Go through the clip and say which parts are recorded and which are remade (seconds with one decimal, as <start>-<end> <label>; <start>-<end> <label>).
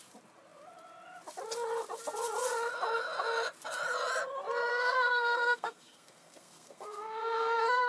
0.0-4.7 recorded; 4.7-7.9 remade